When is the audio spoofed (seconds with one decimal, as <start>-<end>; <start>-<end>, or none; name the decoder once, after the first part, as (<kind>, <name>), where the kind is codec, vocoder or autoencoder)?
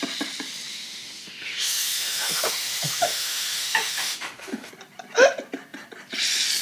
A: 0.7-4.7 (autoencoder, DAC-VAE)